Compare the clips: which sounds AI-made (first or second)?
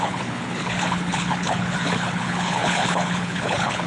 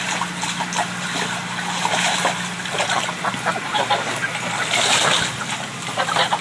first